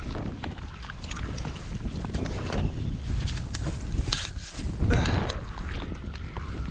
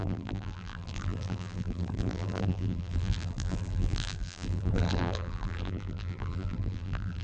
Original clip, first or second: first